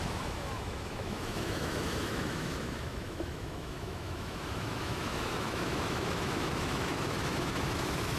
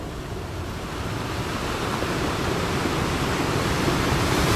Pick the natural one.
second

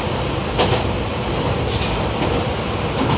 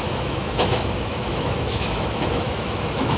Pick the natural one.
first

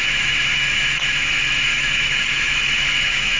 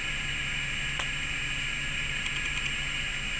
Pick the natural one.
second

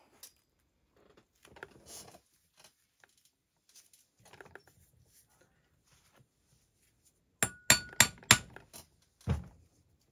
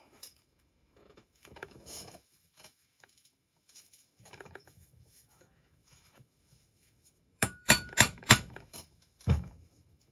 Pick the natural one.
first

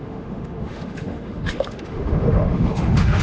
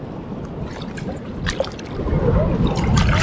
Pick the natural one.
second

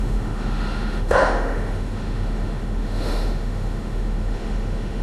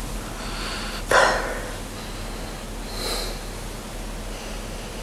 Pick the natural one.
second